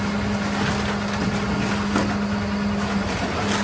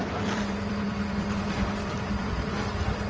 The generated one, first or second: second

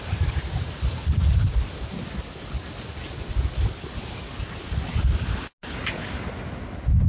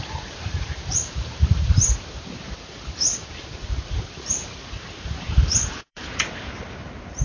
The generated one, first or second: second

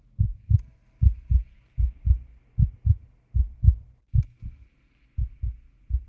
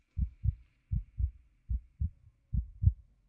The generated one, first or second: second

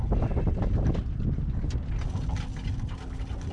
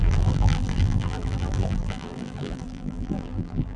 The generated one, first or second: second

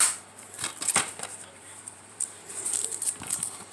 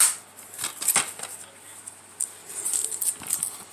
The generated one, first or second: first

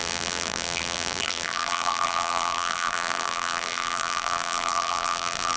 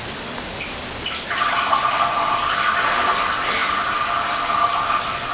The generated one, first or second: first